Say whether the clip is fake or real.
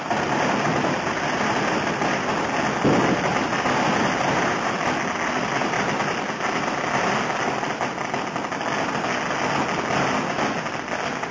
real